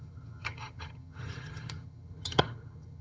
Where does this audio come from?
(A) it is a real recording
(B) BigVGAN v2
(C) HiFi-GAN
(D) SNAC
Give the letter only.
C